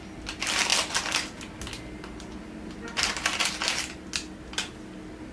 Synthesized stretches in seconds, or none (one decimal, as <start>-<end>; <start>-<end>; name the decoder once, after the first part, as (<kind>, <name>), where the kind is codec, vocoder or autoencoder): none